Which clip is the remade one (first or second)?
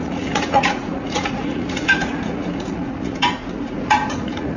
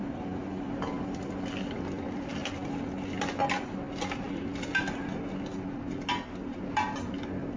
first